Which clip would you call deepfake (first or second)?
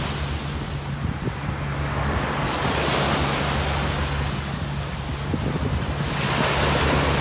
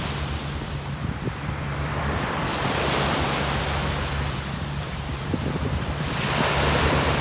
second